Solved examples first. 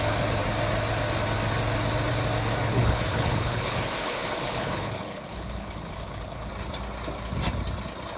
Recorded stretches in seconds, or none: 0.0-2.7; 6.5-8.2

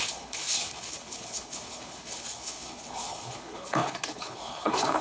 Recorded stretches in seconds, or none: none

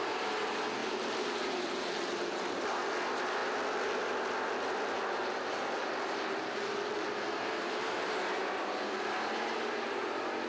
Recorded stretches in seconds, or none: 0.0-10.5

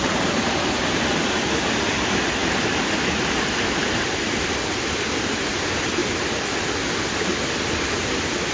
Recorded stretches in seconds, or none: 0.0-8.5

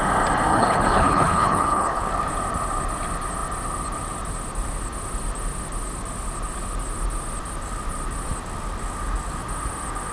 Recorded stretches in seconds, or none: 0.0-0.5; 2.1-10.1

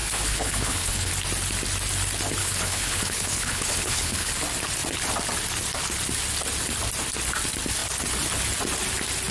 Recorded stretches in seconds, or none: 1.1-2.4; 4.3-9.3